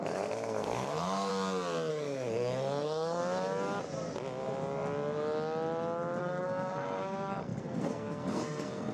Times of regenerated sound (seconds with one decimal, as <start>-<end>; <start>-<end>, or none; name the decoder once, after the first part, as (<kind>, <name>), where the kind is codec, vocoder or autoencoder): 0.0-1.3 (codec, SNAC); 1.9-3.2; 6.2-8.9